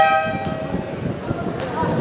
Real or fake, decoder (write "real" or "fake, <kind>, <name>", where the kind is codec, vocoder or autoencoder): real